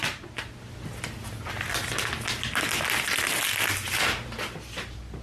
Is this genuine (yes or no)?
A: yes